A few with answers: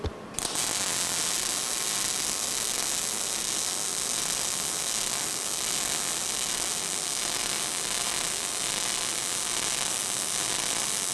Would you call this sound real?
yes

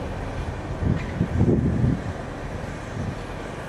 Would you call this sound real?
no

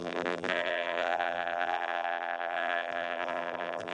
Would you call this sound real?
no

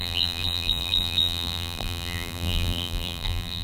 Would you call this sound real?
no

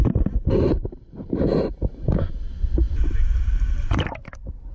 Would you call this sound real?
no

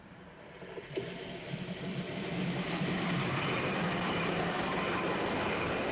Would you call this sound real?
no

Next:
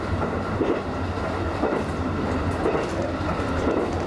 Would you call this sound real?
no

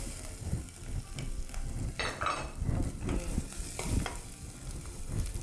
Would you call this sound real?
yes